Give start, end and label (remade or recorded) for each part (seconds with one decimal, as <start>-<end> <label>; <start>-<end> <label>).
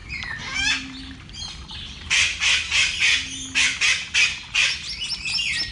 0.0-5.7 recorded